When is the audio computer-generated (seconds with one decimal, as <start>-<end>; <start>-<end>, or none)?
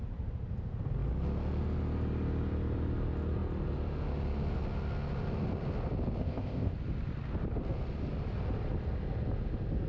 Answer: 6.2-6.7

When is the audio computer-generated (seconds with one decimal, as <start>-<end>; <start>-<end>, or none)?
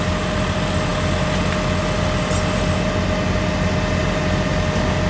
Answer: none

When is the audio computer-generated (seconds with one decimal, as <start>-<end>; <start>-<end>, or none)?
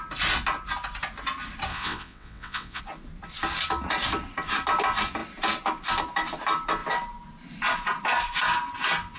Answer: 1.7-2.8